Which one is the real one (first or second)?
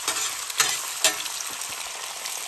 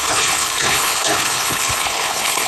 first